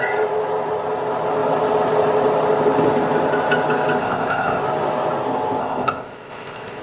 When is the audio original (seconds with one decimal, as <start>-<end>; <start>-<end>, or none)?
0.0-4.0; 4.6-5.6